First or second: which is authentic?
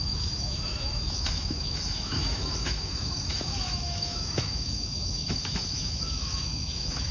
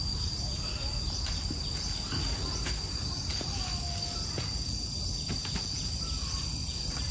second